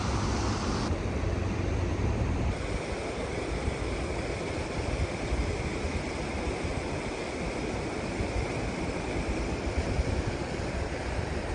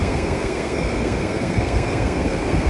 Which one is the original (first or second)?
first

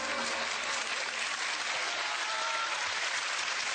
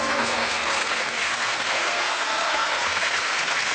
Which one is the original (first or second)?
first